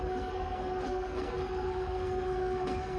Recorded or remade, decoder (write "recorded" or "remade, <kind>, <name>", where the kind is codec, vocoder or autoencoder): remade, codec, SNAC